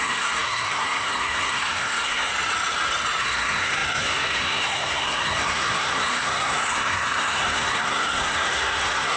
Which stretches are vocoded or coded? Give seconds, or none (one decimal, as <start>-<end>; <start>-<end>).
0.0-2.3; 3.2-9.2